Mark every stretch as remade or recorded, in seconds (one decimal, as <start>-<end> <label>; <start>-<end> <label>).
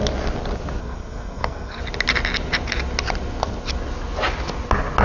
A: 0.0-0.8 recorded; 0.8-1.8 remade; 1.8-5.0 recorded